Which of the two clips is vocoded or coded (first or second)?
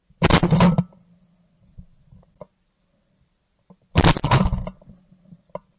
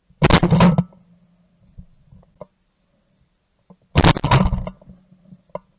first